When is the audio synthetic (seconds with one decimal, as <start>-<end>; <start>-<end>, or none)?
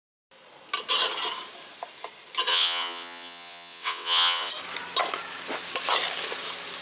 2.5-4.5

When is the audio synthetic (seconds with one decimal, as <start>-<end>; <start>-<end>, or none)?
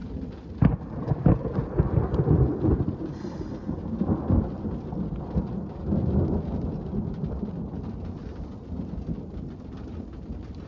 none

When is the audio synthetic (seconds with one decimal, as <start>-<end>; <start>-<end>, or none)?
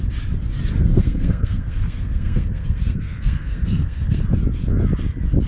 0.9-4.2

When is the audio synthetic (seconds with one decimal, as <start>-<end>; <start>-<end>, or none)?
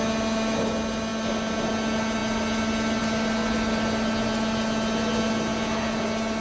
none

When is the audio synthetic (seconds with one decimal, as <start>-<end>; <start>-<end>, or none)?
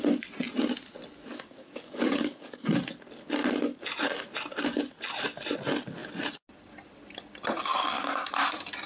1.3-2.7; 7.7-8.3